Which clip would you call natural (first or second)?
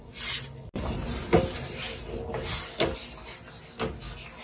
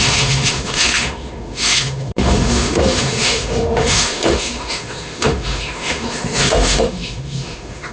first